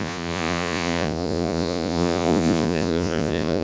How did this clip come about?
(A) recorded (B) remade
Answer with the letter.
B